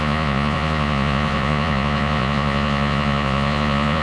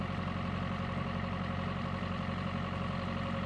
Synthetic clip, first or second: first